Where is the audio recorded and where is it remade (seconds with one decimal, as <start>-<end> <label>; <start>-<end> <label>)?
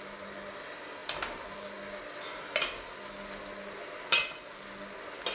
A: 0.0-5.3 recorded